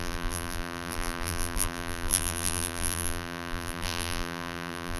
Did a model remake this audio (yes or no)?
yes